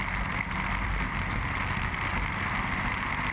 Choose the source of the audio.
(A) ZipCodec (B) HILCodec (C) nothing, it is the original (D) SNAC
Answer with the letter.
C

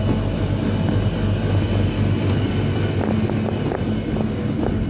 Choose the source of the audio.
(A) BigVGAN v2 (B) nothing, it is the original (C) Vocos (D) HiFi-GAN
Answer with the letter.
B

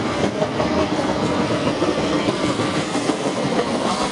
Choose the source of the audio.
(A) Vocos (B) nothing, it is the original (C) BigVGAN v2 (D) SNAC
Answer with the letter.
D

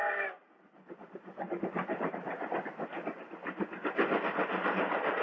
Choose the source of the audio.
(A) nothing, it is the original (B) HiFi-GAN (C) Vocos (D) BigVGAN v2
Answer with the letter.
A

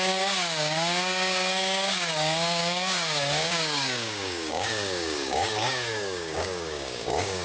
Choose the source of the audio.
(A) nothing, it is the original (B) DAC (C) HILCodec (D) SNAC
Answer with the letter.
B